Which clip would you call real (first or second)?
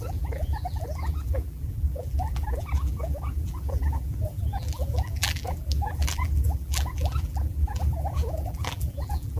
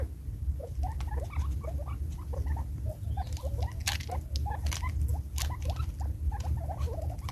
second